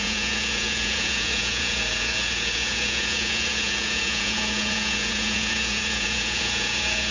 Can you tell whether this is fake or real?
fake